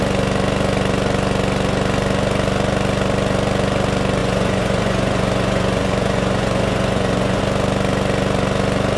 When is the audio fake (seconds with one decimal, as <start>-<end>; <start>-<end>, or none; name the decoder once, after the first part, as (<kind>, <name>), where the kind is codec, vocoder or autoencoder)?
4.2-7.4 (vocoder, Vocos)